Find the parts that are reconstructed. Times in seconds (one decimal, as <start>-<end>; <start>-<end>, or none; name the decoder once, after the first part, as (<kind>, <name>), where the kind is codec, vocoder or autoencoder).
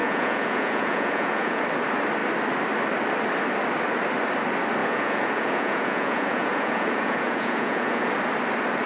0.0-1.6 (vocoder, Vocos); 4.8-8.1